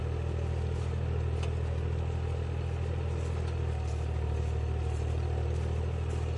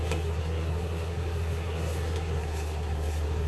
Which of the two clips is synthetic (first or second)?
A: second